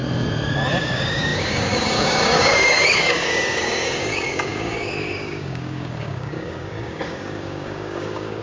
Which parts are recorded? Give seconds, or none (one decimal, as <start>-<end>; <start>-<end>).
0.0-0.8